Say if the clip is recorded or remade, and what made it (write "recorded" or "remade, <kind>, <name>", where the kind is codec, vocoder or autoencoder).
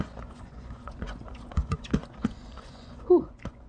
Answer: remade, vocoder, Vocos